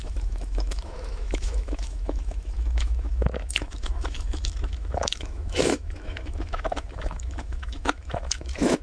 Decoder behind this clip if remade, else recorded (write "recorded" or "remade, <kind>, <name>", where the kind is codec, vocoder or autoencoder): remade, autoencoder, DAC-VAE